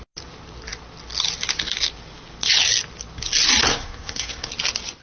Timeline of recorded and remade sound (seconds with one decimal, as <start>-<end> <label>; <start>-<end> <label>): 0.0-3.7 recorded; 3.7-4.5 remade; 4.5-5.0 recorded